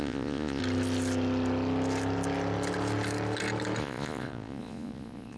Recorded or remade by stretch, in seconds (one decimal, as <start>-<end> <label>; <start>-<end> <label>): 0.0-0.6 remade; 0.6-3.8 recorded; 3.8-5.4 remade